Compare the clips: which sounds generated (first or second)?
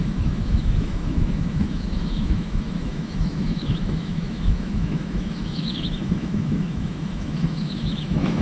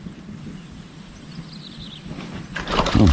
first